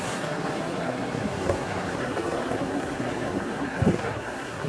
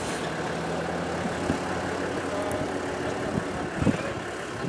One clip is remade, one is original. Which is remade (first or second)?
first